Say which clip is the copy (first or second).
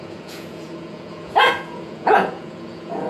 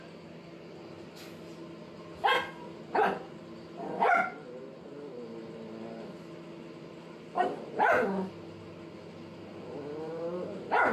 first